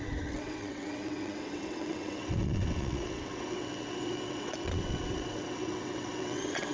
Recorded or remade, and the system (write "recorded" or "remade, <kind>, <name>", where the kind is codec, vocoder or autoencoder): remade, vocoder, WaveNeXt